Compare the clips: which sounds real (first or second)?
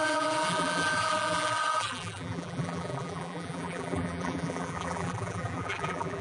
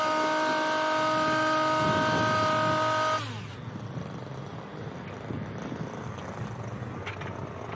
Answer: second